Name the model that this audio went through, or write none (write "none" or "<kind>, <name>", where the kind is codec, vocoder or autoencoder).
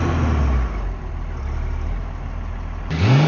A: none